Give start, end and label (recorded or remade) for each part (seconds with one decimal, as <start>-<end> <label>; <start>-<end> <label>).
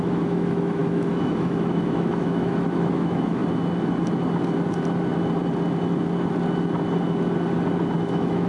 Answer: 0.0-3.4 remade; 3.4-8.0 recorded; 8.0-8.5 remade